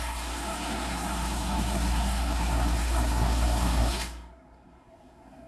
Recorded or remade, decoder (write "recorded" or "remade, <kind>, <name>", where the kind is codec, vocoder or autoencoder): remade, codec, SNAC